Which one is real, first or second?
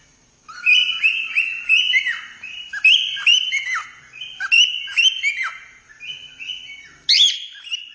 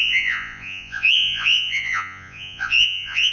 first